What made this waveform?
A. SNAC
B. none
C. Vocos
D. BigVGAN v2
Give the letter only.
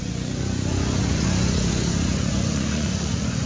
C